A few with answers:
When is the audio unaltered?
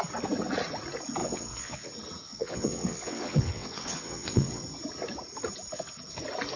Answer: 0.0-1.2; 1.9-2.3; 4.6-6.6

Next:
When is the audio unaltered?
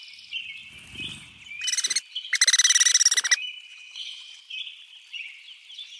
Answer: 0.0-3.7; 4.4-6.0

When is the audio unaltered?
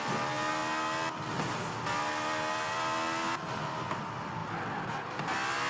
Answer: 0.0-5.7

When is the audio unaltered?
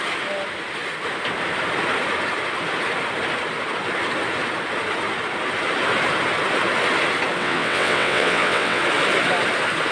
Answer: 0.0-7.4; 8.8-9.9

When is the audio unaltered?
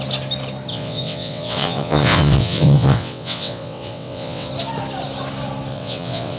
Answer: 0.0-0.7; 4.5-5.7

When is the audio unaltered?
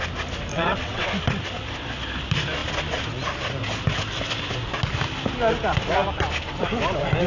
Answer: 0.0-0.5; 1.1-7.3